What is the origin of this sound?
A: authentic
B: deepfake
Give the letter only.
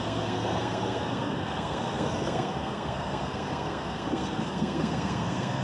B